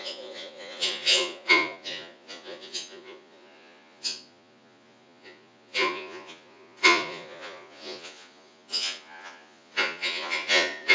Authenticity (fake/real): fake